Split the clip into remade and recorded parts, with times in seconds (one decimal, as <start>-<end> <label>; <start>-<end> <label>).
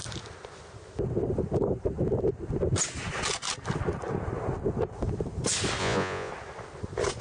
0.0-5.8 recorded; 5.8-6.3 remade; 6.3-7.2 recorded